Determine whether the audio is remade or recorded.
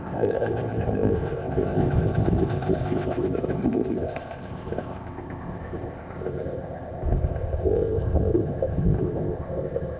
remade